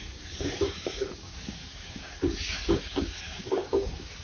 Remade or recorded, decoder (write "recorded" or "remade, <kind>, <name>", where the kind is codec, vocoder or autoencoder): remade, codec, DAC